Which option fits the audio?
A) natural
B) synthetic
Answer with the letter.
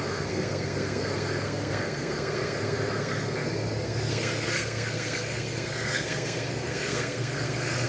B